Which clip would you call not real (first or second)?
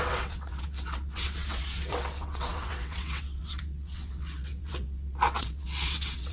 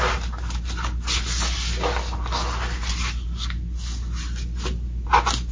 first